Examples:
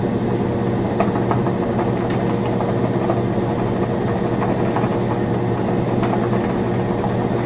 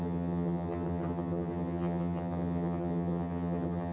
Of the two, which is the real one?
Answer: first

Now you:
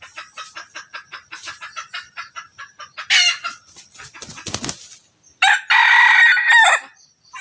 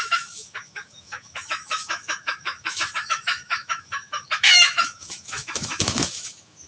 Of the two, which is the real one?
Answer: first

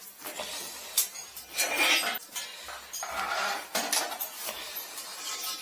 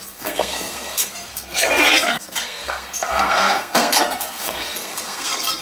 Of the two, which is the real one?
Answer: first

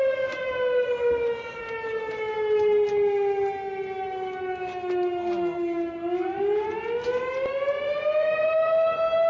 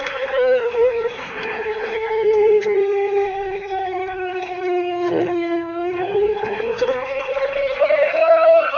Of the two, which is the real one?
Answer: first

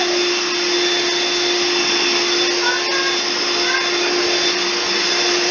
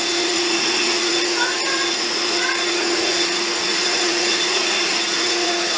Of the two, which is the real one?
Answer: first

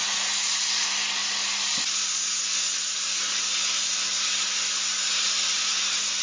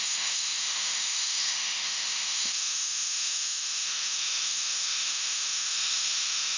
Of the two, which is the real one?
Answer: first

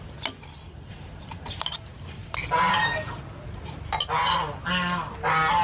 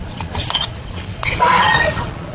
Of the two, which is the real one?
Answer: first